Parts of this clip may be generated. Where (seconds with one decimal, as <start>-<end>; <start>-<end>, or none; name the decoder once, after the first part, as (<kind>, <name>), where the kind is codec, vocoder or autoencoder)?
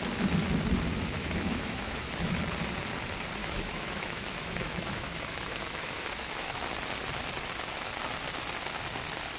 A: 1.2-2.4 (autoencoder, DAC-VAE); 3.4-6.7